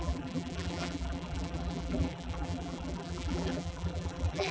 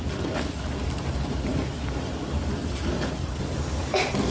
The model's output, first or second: first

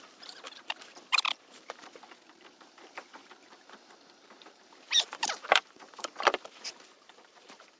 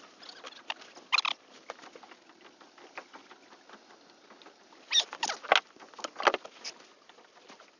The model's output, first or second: first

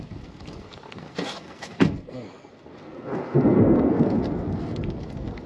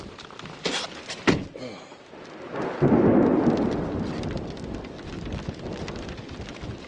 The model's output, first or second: first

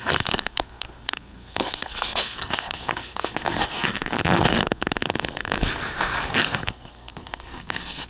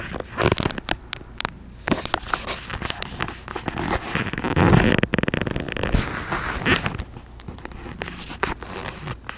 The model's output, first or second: first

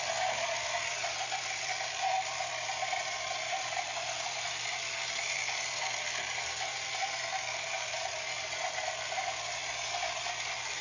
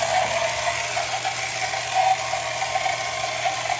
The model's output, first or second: first